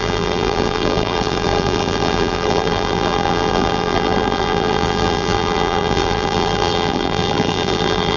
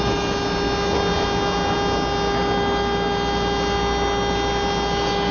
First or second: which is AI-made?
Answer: first